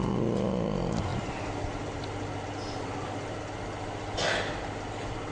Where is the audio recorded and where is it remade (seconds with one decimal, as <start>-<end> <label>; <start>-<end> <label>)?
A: 0.0-5.3 recorded